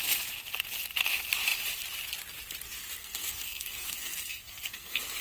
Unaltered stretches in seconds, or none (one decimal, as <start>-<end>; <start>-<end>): 0.0-3.0